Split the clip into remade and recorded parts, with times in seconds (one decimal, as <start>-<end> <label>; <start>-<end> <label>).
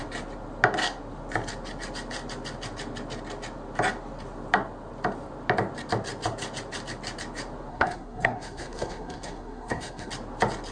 0.0-7.7 recorded; 7.7-10.1 remade; 10.1-10.7 recorded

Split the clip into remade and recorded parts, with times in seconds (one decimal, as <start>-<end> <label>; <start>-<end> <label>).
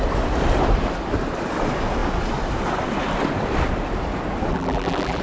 0.0-4.5 recorded; 4.5-5.2 remade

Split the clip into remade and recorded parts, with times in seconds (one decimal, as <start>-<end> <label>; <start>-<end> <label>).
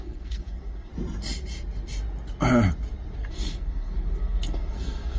0.0-0.9 remade; 0.9-3.3 recorded; 3.3-5.2 remade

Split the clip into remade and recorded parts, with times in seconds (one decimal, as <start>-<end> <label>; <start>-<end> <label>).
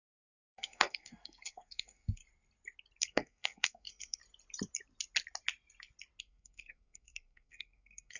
0.0-2.2 remade; 2.2-3.0 recorded; 3.0-4.2 remade; 4.2-6.2 recorded; 6.2-8.2 remade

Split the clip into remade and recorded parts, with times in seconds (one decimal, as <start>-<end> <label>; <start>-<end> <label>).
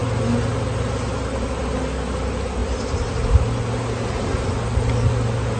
0.0-5.6 recorded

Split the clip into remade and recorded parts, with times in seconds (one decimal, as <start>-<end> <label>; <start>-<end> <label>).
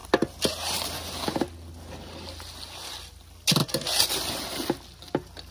0.0-5.5 recorded